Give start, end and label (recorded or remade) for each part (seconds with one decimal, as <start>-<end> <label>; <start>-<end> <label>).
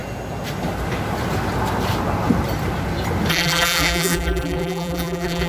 0.0-3.3 recorded; 3.3-5.5 remade